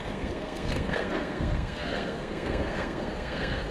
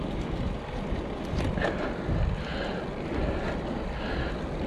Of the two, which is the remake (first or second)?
first